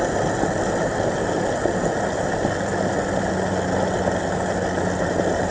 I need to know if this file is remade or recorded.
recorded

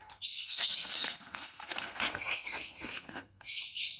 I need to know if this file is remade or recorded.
remade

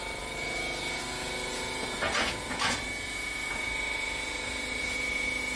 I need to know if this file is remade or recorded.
remade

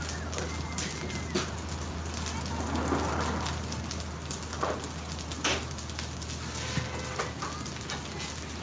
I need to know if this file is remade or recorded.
recorded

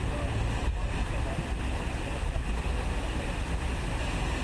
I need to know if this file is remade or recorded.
recorded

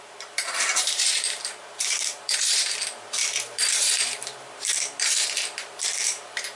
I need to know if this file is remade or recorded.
remade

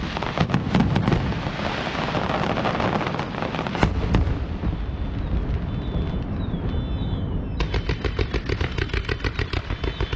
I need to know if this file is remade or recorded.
recorded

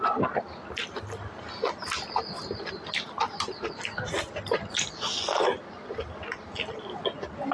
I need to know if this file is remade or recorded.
recorded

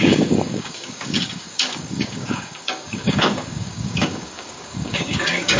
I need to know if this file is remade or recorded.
remade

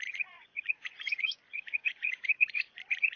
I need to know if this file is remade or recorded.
remade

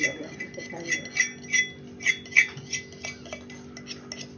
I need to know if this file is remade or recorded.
recorded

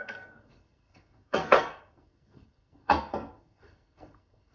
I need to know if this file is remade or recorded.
remade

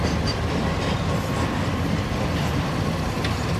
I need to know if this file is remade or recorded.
recorded